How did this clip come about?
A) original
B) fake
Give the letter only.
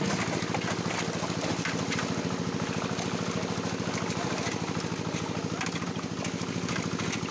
A